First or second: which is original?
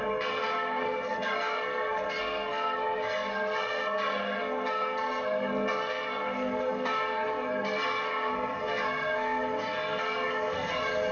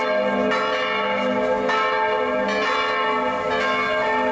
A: second